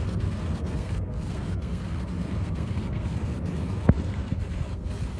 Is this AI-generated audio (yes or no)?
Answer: yes